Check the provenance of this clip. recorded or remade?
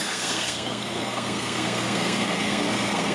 remade